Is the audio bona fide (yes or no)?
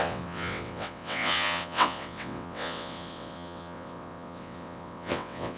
no